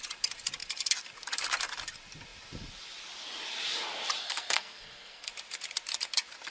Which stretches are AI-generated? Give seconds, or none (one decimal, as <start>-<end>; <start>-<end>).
4.2-5.3